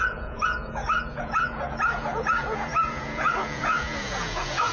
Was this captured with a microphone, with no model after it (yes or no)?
no